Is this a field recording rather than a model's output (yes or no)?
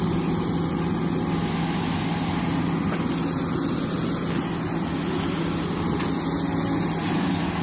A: yes